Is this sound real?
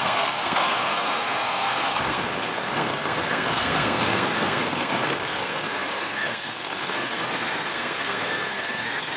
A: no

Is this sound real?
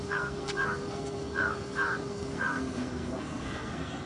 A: no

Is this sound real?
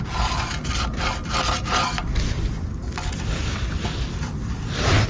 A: yes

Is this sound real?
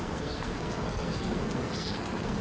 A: no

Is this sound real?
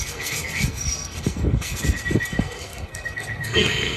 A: no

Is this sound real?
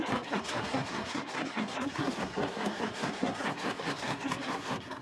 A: no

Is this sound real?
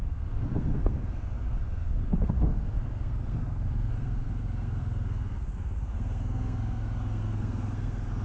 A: no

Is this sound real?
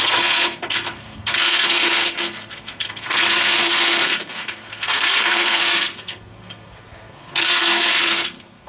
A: no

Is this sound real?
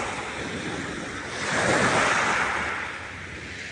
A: yes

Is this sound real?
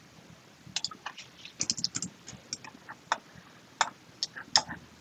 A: yes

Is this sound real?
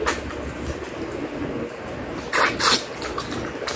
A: yes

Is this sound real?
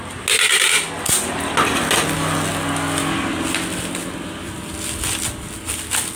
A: yes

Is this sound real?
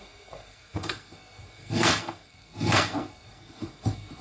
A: no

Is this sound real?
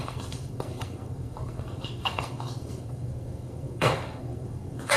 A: no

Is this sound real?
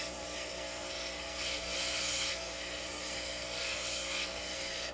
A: no